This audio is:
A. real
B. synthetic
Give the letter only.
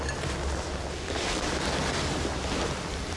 A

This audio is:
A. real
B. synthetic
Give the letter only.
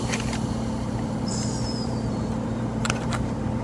B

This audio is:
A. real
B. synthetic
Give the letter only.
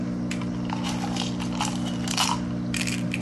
A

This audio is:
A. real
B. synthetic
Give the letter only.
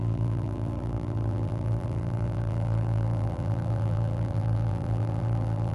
B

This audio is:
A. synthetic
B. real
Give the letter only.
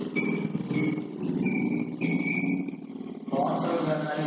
B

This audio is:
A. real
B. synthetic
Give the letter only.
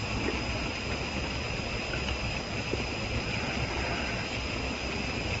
A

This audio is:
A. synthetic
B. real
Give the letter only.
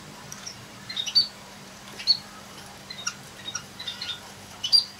A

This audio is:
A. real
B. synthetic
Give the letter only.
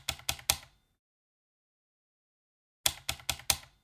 A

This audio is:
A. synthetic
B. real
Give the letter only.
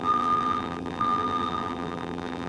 A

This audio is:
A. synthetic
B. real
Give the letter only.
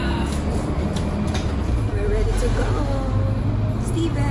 B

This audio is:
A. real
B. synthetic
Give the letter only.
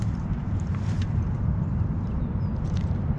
B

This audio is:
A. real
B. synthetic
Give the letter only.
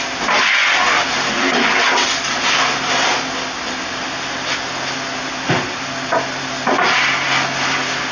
A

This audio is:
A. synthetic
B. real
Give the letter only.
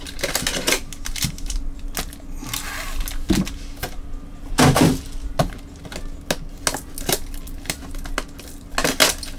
B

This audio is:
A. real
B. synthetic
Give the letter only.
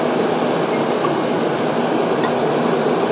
A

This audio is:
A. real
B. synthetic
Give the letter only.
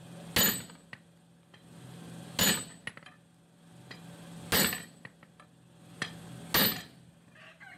A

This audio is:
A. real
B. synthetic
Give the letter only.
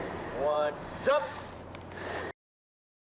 B